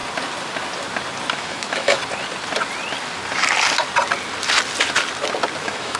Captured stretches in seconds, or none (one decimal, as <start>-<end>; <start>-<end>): 0.0-1.3; 2.0-5.6